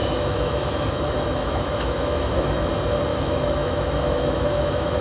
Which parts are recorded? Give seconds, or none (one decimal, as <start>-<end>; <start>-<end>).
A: 2.7-3.1